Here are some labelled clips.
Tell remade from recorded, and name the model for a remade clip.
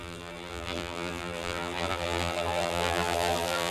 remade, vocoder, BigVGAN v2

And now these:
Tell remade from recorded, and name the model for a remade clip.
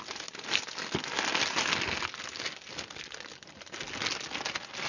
recorded